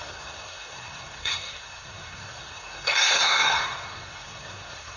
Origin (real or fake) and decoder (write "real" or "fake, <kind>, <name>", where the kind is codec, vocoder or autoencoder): fake, codec, SNAC